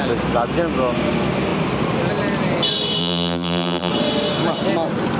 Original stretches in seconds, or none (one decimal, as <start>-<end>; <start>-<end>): 0.0-3.0; 3.9-5.2